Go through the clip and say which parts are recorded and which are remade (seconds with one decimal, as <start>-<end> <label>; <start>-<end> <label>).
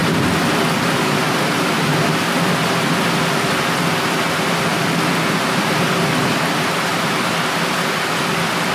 0.0-8.7 recorded